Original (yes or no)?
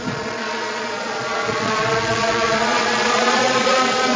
no